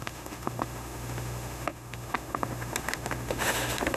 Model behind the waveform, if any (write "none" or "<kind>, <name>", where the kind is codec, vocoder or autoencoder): autoencoder, DAC-VAE